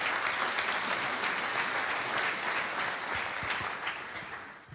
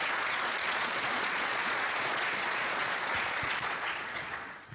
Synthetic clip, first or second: second